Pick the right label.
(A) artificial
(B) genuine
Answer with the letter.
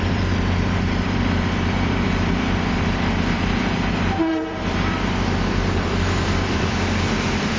A